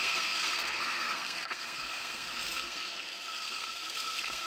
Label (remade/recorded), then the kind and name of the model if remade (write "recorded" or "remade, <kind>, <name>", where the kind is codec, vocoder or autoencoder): remade, codec, SNAC